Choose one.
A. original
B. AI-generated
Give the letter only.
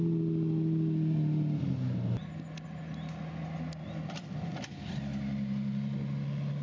A